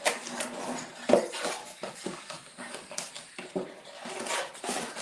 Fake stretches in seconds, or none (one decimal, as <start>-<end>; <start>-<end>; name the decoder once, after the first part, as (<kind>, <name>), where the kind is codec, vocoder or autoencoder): 1.6-3.1 (codec, DAC)